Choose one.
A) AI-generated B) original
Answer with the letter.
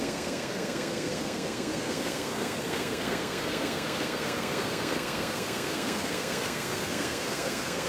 A